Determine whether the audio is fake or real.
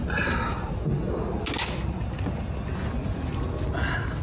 real